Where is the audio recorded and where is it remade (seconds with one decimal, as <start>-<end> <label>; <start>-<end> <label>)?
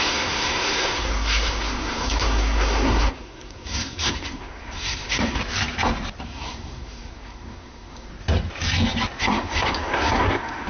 0.0-5.4 remade; 5.4-6.2 recorded; 6.2-8.1 remade; 8.1-9.2 recorded; 9.2-10.7 remade